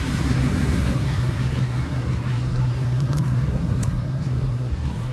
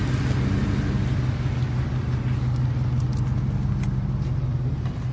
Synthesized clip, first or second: first